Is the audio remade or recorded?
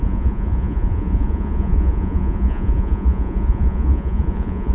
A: remade